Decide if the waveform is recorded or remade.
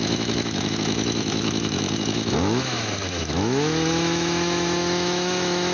remade